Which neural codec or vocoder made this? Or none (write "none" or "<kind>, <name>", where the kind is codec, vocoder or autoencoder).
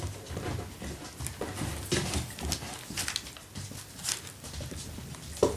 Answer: none